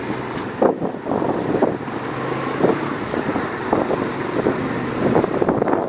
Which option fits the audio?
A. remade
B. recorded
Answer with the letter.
B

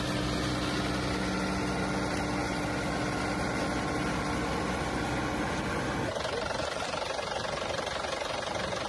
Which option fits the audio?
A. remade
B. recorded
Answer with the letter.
B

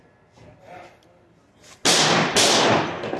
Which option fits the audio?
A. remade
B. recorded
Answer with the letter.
B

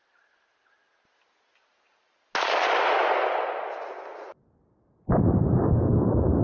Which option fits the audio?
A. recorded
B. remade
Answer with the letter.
A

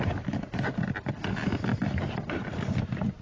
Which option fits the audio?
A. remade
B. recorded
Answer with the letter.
B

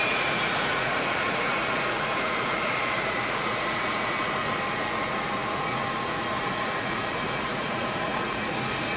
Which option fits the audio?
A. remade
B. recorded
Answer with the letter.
A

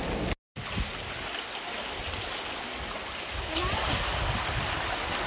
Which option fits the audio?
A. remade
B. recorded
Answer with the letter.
B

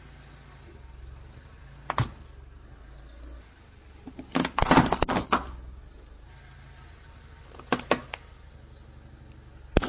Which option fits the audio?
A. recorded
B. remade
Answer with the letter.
A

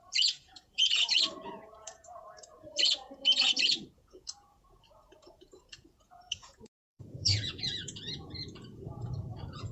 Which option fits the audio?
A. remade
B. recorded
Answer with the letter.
A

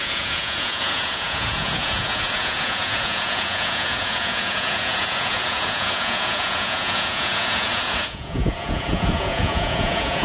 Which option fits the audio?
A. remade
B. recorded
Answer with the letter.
A